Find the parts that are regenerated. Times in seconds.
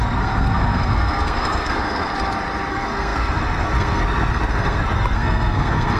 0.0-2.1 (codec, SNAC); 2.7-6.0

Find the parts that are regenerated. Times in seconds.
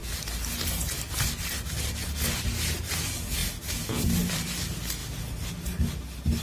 none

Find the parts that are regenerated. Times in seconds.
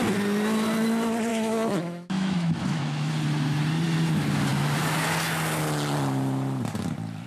1.3-3.1 (autoencoder, DAC-VAE)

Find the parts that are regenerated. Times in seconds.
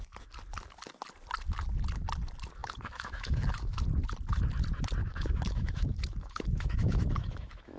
2.6-3.8 (autoencoder, DAC-VAE); 5.0-7.8